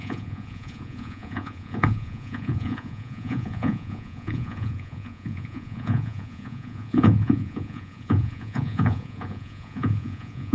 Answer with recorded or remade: remade